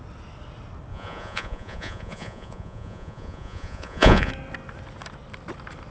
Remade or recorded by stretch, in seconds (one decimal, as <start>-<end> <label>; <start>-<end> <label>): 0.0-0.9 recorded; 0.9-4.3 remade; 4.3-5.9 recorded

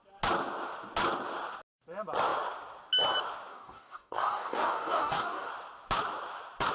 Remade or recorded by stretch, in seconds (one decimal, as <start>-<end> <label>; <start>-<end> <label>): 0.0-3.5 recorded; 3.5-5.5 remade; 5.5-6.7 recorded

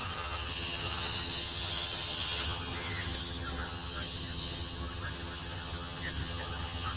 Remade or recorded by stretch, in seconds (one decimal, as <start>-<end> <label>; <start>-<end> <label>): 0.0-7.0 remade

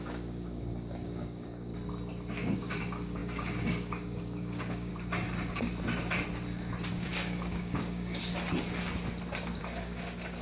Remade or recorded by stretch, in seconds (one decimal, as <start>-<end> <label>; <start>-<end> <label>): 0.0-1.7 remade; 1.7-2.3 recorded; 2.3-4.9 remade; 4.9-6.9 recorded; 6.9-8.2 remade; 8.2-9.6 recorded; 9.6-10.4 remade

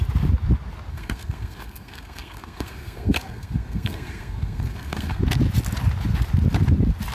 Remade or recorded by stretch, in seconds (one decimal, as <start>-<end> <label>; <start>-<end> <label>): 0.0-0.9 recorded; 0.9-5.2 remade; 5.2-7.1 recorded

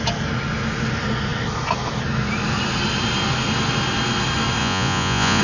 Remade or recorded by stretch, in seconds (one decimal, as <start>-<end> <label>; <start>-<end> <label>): 0.0-4.6 recorded; 4.6-5.4 remade

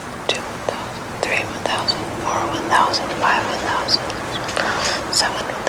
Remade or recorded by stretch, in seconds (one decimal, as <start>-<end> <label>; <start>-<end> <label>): 0.0-5.7 recorded

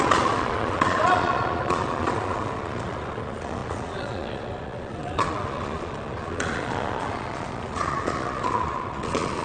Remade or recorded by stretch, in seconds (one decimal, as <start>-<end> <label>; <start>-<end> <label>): 0.0-9.4 remade